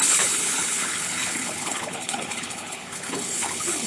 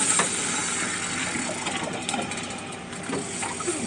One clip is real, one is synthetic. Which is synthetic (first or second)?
first